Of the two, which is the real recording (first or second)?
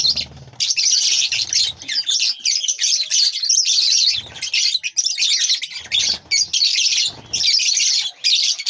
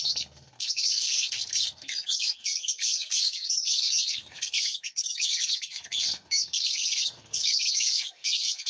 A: first